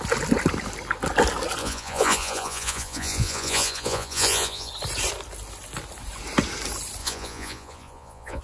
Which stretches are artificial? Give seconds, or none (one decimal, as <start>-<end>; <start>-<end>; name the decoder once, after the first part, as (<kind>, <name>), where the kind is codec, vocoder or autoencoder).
1.6-4.7 (vocoder, Vocos); 7.0-8.4